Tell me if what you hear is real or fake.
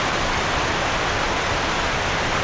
real